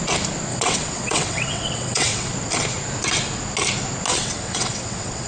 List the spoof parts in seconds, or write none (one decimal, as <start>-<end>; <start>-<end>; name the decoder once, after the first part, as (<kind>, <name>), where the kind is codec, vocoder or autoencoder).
0.5-2.3 (vocoder, WaveNeXt); 4.1-5.3